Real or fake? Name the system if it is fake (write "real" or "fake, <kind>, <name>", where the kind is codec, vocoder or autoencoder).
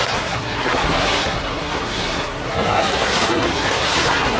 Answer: fake, codec, SNAC